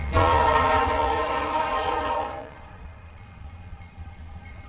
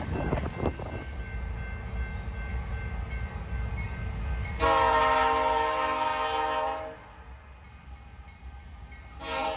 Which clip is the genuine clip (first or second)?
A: second